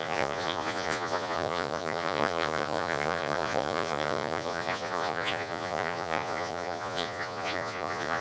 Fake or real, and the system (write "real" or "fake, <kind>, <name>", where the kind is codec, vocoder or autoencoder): fake, vocoder, Vocos